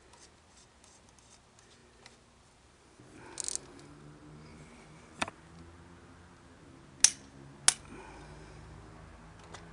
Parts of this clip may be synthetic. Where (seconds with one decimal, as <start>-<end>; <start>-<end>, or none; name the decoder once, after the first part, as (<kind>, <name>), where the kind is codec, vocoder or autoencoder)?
4.5-5.3 (vocoder, BigVGAN v2)